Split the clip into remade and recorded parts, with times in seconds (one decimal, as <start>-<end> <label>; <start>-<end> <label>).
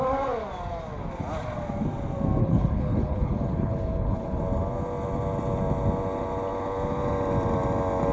0.0-2.4 recorded; 2.4-4.4 remade; 4.4-8.1 recorded